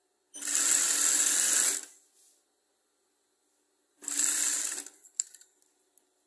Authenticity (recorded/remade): recorded